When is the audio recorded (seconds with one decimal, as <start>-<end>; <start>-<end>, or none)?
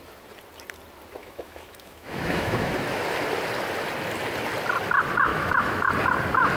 0.0-1.2; 2.7-5.3; 5.9-6.6